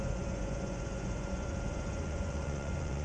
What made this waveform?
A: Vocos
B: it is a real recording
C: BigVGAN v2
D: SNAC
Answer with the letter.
A